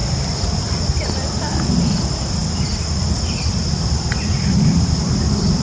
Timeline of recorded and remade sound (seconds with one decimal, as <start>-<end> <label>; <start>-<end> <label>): 0.0-5.6 recorded

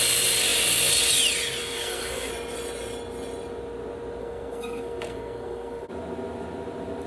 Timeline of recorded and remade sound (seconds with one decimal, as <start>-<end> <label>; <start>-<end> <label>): 0.0-1.6 recorded; 1.6-2.3 remade; 2.3-4.2 recorded; 4.2-5.9 remade; 5.9-7.1 recorded

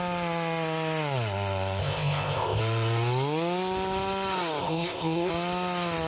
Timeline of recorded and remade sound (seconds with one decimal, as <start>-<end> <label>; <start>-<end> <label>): 0.0-1.8 recorded; 1.8-2.6 remade; 2.6-4.6 recorded; 4.6-5.3 remade; 5.3-6.1 recorded

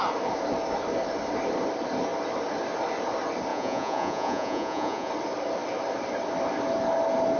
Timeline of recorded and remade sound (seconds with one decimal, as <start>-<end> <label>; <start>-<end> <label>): 0.0-3.5 recorded; 3.5-5.1 remade; 5.1-7.4 recorded

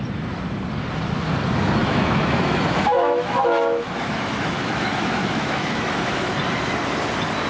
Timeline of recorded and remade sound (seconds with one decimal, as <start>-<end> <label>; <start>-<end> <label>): 0.0-1.8 recorded; 1.8-6.3 remade; 6.3-7.5 recorded

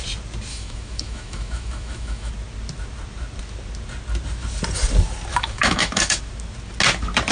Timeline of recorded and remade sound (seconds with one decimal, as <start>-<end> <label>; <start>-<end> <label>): 0.0-0.5 recorded; 0.5-2.3 remade; 2.3-5.3 recorded; 5.3-6.2 remade; 6.2-7.3 recorded

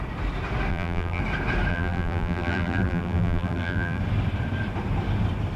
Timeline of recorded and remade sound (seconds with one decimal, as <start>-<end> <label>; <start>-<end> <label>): 0.0-0.7 recorded; 0.7-1.2 remade; 1.2-1.7 recorded; 1.7-4.0 remade; 4.0-5.6 recorded